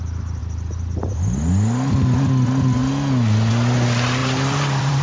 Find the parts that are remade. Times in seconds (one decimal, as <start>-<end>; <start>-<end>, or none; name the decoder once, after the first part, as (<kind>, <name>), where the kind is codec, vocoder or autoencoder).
4.2-5.0 (vocoder, BigVGAN v2)